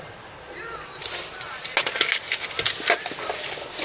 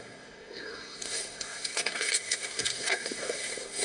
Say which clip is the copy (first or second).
second